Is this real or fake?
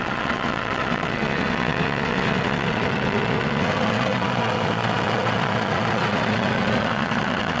fake